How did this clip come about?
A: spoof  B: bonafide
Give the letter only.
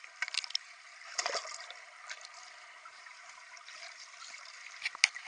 B